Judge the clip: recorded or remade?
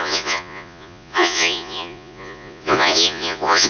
remade